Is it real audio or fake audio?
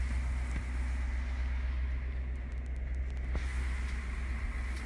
real